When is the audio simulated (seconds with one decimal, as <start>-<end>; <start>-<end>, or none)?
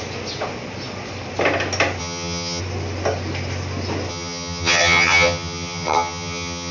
2.0-2.6; 4.1-6.7